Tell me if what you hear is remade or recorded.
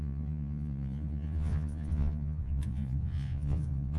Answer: remade